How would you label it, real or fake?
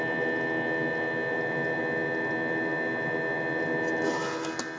real